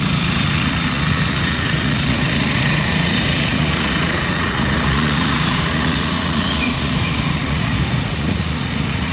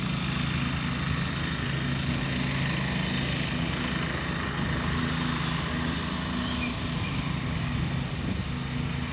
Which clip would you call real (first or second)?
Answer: second